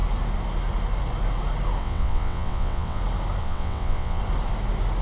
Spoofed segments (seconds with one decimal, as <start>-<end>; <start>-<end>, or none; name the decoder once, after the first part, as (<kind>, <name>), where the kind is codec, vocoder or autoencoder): 1.8-3.0 (vocoder, WaveNeXt); 3.4-4.2